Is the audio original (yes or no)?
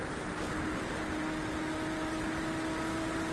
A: yes